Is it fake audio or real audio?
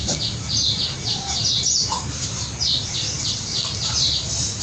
real